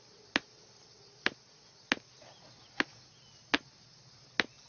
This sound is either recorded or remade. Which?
recorded